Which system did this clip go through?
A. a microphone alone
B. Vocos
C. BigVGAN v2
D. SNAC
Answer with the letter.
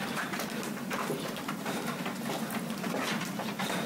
A